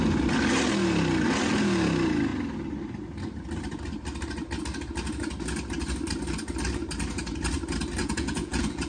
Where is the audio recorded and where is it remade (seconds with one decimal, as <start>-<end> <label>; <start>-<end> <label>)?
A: 0.0-8.0 recorded; 8.0-8.9 remade